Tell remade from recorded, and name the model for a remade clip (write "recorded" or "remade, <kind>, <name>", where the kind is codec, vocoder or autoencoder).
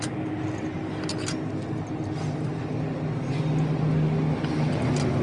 recorded